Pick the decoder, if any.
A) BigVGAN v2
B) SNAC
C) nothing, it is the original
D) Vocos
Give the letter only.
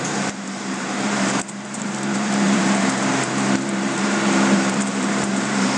A